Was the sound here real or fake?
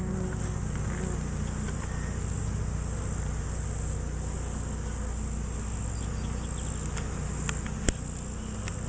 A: real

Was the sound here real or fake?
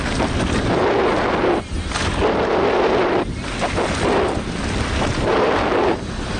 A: real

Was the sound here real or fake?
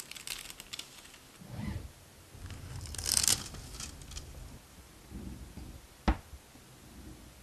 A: real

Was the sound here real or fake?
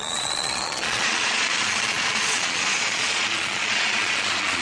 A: fake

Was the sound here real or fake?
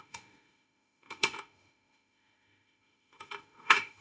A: fake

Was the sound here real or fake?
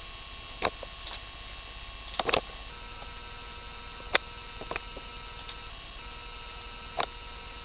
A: real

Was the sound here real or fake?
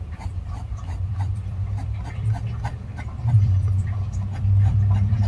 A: fake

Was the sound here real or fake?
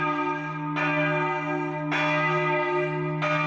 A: real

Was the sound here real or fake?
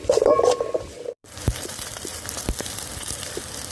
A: fake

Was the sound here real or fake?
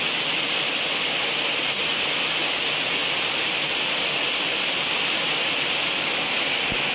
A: real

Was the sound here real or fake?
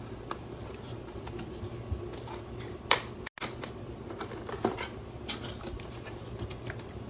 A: real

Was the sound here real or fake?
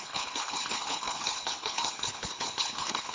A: fake